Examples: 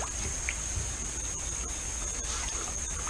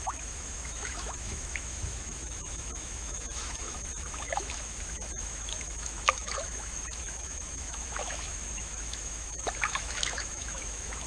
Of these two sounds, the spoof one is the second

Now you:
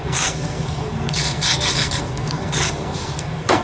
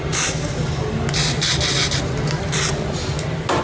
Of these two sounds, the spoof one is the first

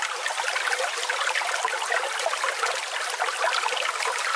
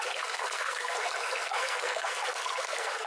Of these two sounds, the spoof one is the second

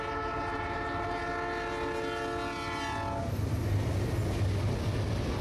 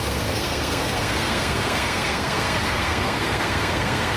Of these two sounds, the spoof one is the second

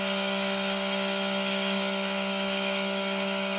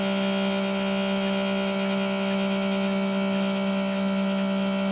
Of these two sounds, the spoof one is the first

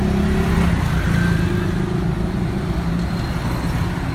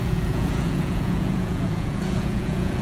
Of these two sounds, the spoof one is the second